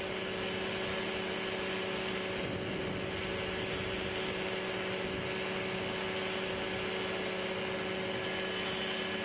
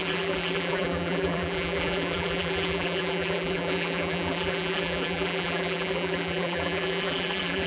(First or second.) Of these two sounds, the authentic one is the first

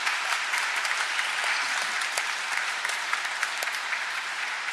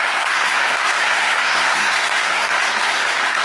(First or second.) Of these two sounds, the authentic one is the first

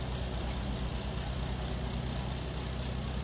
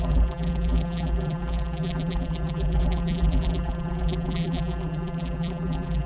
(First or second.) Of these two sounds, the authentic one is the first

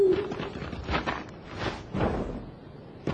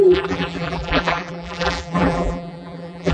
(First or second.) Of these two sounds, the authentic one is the first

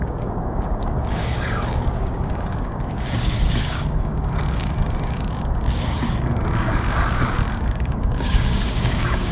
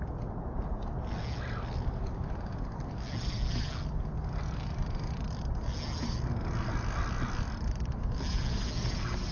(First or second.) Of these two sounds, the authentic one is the second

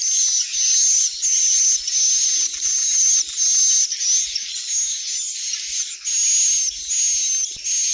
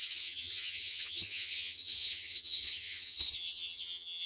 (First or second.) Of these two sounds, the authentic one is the first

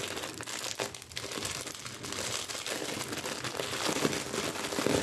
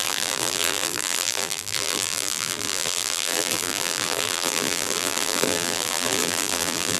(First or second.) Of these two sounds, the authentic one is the first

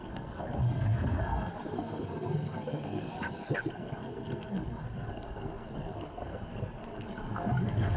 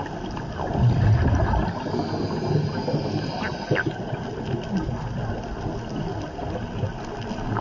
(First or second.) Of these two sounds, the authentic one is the second